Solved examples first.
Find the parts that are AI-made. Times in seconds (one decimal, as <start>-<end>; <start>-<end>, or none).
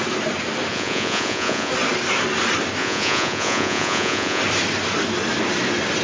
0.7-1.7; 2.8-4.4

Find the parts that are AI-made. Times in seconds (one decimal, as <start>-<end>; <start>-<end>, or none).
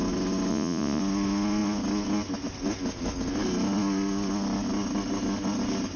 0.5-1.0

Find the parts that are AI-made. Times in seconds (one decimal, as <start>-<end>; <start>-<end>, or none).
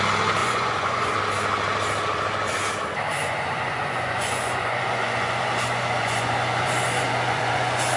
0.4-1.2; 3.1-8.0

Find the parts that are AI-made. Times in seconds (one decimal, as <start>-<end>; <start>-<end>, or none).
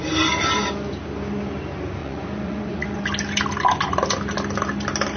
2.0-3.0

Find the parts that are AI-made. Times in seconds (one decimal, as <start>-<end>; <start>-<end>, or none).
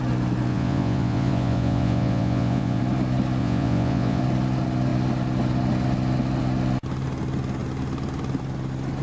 0.5-2.8; 3.4-4.2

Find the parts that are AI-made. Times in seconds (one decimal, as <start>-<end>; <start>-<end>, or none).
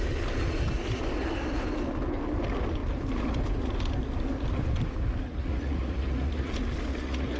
5.3-6.5; 6.9-7.4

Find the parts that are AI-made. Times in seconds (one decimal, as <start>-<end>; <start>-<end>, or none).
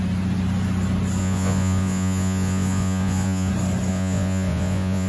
1.2-3.5; 3.9-5.1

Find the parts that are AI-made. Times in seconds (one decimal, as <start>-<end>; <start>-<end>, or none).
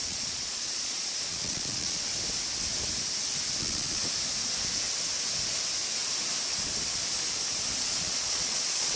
0.0-2.1; 3.6-4.0; 7.8-9.0